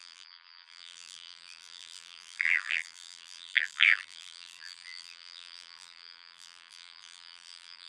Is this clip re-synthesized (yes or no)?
yes